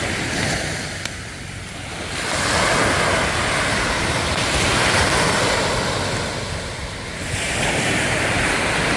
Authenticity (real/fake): real